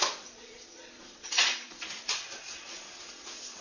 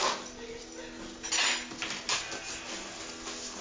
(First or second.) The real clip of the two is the second